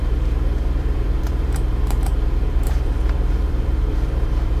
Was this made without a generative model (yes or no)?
no